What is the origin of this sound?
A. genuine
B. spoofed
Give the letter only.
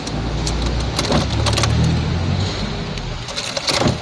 A